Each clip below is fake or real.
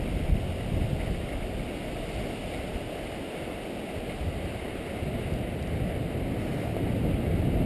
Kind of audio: real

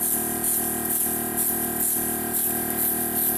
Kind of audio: fake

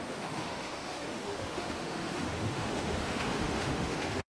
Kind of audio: fake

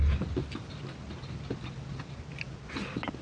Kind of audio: real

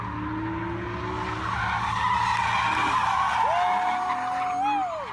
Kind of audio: real